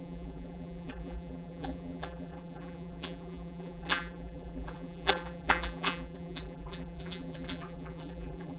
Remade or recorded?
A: remade